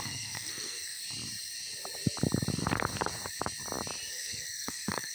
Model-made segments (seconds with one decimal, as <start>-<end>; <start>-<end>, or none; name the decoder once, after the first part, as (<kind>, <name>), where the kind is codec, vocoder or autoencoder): 0.0-1.0 (codec, SNAC); 4.1-5.1